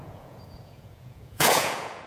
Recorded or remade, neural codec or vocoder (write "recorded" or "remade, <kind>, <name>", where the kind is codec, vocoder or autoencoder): remade, vocoder, Vocos